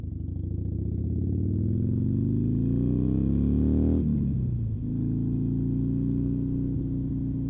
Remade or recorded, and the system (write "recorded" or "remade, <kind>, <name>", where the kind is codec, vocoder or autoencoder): recorded